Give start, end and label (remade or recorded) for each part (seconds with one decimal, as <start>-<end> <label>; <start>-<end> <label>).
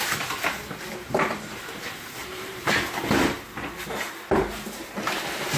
0.0-2.2 recorded; 2.2-3.0 remade; 3.0-5.6 recorded